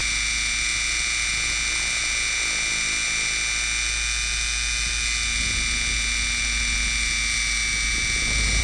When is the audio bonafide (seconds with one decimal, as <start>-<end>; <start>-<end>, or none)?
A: 0.0-8.6